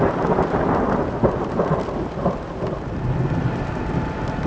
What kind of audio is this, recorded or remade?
recorded